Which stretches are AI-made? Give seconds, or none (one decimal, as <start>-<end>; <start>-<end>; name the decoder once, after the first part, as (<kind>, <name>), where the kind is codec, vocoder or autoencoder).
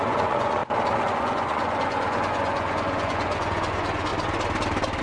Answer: 0.0-0.6 (vocoder, Vocos); 1.1-4.1